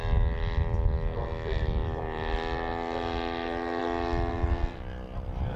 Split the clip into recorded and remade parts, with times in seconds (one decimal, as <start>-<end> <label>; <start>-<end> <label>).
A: 0.0-1.4 recorded; 1.4-2.0 remade; 2.0-5.6 recorded